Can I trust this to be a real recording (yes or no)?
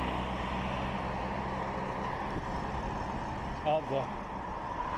yes